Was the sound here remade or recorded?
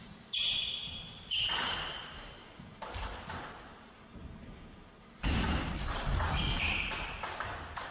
remade